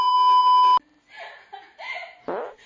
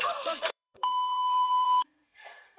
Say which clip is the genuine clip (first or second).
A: first